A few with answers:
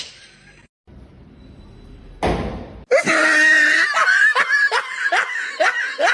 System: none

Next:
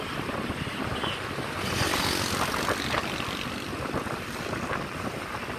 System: none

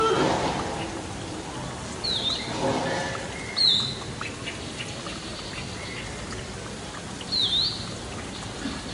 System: none